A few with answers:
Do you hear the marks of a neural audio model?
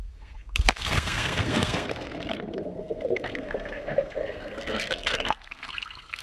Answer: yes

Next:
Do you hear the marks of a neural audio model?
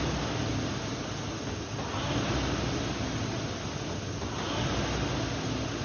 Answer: no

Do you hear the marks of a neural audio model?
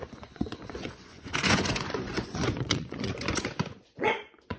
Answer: yes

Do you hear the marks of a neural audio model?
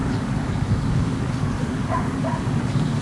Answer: yes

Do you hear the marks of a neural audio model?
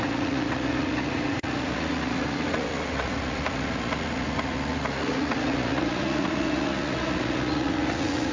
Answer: yes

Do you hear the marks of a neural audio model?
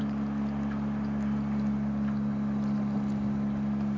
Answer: no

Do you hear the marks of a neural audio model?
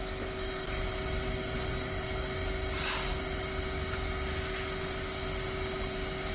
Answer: no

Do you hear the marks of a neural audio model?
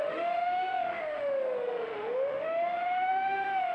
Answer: yes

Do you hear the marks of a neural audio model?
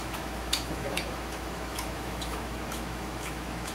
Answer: yes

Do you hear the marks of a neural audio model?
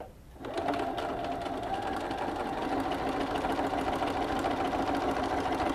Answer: no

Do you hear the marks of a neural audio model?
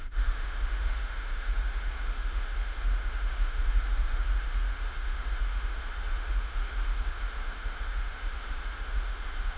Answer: yes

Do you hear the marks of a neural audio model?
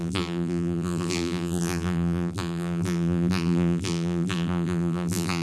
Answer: yes